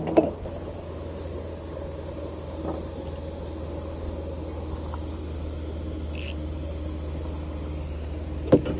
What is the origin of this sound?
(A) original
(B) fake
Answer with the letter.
A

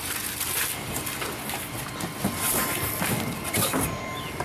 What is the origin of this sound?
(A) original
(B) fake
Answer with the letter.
A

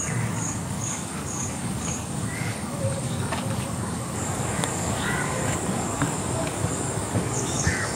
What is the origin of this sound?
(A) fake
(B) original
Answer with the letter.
A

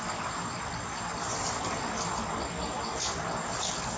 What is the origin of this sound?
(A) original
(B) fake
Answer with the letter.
A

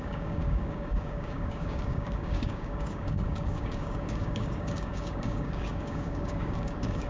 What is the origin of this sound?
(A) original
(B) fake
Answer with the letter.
B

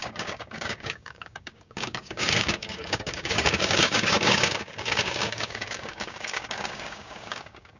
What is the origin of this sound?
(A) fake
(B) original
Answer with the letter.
A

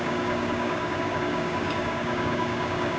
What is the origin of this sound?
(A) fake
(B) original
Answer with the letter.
A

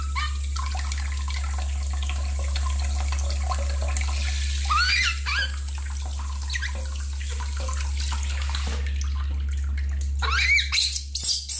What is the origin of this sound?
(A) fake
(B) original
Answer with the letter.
B